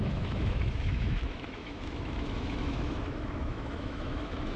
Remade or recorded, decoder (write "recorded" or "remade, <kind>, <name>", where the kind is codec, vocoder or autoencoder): remade, autoencoder, DAC-VAE